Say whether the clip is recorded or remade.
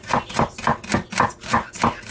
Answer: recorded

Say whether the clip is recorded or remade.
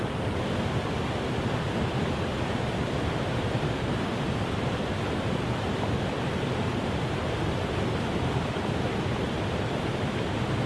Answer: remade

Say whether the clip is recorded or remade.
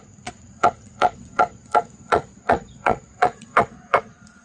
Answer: remade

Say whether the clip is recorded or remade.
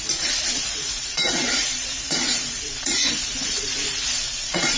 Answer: remade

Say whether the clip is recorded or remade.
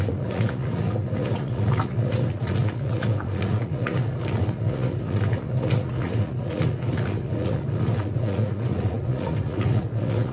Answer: remade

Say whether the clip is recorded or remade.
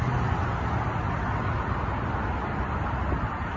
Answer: recorded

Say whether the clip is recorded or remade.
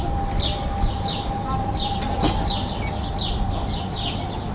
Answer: recorded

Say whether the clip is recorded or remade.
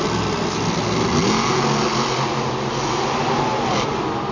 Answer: recorded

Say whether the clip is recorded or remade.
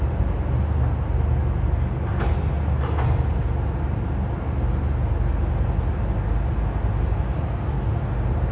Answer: recorded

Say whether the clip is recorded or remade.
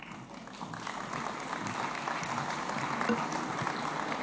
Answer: recorded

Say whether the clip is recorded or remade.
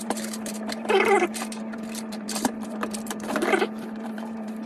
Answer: remade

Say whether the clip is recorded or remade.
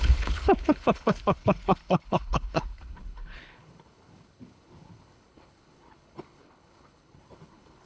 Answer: remade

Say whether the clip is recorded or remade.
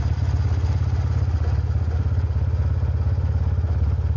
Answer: recorded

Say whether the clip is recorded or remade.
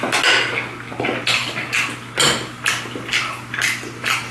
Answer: recorded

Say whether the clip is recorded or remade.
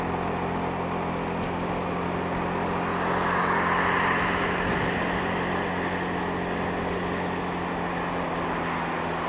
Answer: recorded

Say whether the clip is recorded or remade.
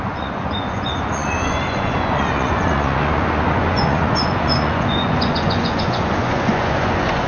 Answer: remade